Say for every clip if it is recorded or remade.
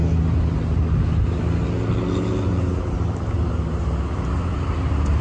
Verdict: recorded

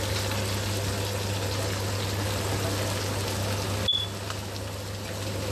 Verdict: recorded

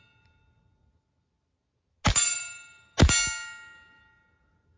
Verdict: recorded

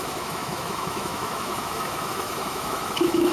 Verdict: remade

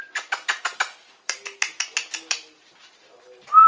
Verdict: remade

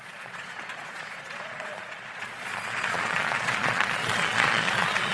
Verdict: remade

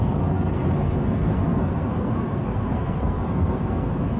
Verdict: remade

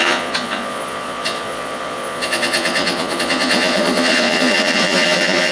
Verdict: remade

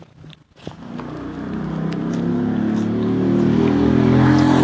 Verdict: recorded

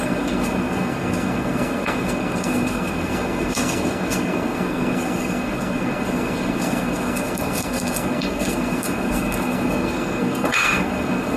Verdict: remade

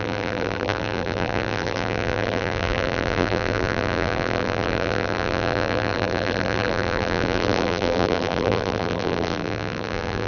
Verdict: remade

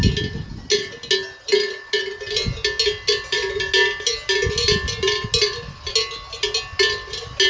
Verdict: recorded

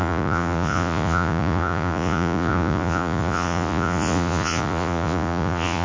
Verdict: remade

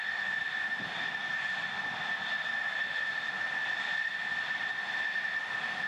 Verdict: recorded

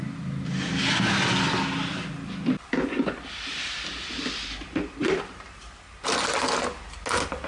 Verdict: recorded